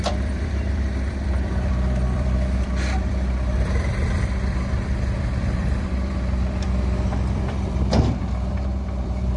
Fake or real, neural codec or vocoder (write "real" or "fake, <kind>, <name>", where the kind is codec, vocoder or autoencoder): fake, vocoder, BigVGAN v2